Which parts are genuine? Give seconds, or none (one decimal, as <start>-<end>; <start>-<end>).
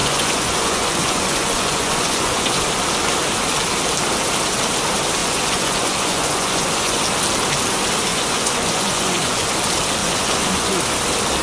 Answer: 2.6-5.2; 7.0-8.1; 9.5-10.0; 10.7-11.4